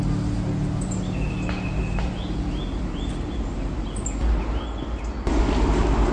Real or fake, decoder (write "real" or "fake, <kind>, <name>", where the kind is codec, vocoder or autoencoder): real